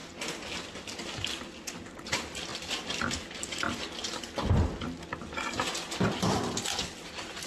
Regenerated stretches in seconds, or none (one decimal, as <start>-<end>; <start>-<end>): none